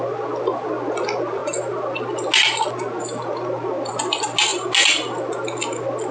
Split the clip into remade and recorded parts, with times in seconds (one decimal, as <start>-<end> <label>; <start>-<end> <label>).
0.0-6.1 recorded